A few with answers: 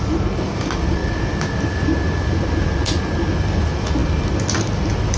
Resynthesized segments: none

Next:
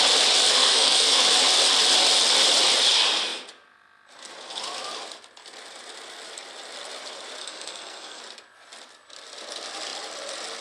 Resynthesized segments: 0.5-1.2 (codec, SNAC); 7.4-8.2

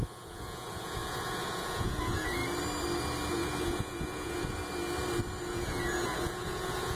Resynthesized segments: 0.0-2.4 (vocoder, Vocos); 3.3-4.6; 5.4-7.0

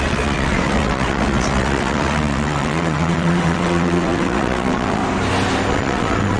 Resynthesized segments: 0.0-5.0 (vocoder, WaveNeXt); 5.7-6.4

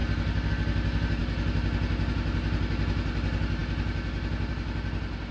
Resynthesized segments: none

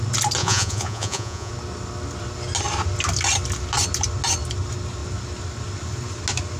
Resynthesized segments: 0.4-1.5 (vocoder, Vocos)

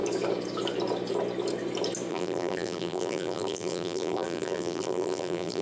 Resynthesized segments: 2.1-5.6 (vocoder, BigVGAN v2)

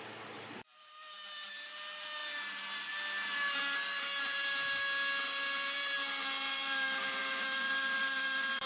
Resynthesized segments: 0.0-2.2 (vocoder, BigVGAN v2); 4.0-8.7